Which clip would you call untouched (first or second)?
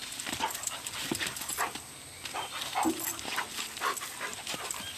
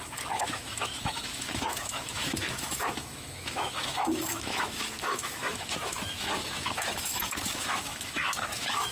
first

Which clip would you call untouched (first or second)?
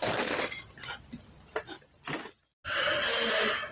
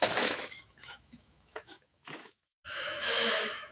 first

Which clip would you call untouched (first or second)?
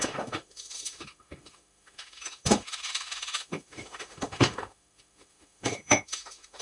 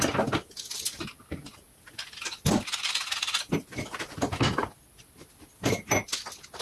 second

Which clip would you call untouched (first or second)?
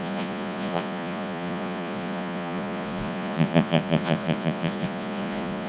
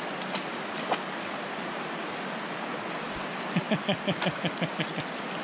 second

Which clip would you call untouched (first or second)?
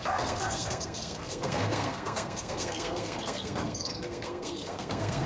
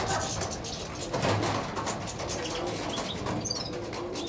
second